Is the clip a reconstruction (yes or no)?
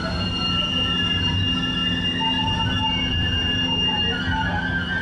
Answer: no